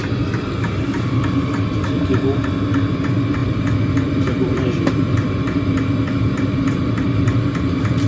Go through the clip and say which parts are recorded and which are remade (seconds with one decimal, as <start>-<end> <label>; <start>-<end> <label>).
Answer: 0.0-3.4 recorded; 3.4-7.4 remade; 7.4-8.1 recorded